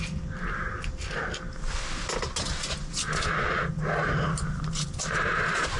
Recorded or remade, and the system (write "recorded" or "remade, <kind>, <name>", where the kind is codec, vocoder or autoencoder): recorded